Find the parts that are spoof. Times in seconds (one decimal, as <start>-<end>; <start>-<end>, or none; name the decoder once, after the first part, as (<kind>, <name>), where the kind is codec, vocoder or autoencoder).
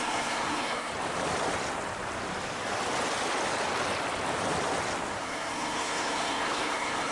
0.0-0.9 (codec, SNAC); 5.2-7.1